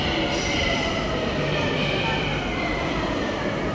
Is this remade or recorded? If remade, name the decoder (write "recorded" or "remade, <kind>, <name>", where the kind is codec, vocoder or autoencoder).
remade, vocoder, BigVGAN v2